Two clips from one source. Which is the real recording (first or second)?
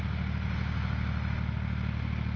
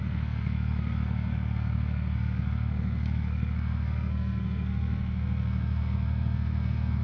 first